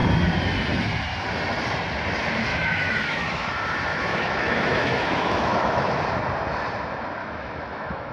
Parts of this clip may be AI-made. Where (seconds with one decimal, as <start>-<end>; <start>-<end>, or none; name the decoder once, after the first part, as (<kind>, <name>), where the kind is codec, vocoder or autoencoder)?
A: 2.5-3.5 (autoencoder, DAC-VAE); 3.9-6.0; 7.2-8.1